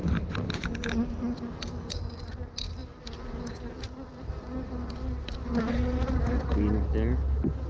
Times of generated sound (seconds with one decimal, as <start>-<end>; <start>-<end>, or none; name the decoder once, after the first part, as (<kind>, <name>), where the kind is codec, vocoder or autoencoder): none